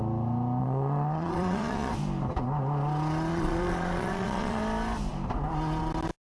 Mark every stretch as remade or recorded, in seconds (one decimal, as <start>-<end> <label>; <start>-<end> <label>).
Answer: 0.0-0.6 recorded; 0.6-1.9 remade; 1.9-3.3 recorded; 3.3-4.6 remade; 4.6-6.2 recorded